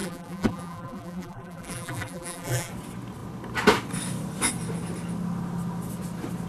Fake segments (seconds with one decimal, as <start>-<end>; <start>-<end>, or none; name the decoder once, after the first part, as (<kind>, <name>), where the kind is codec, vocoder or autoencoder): 0.0-2.7 (vocoder, BigVGAN v2)